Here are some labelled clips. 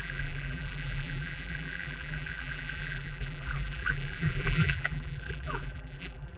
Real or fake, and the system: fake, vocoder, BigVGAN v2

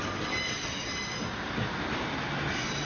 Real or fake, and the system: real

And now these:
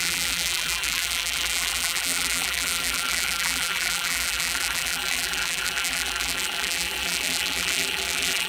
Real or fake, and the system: fake, vocoder, BigVGAN v2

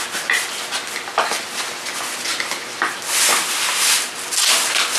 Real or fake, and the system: real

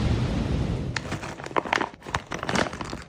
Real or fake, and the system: fake, vocoder, BigVGAN v2